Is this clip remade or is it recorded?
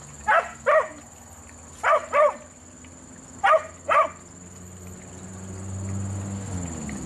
recorded